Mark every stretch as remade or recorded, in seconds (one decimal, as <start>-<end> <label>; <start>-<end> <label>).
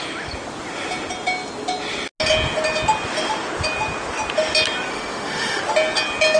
0.0-4.9 recorded; 4.9-5.6 remade; 5.6-6.4 recorded